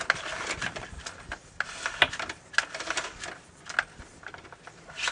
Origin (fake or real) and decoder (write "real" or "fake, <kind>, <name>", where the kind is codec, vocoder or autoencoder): real